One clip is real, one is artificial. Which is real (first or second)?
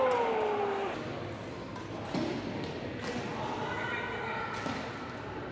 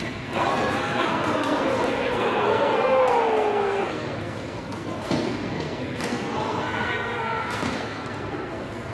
first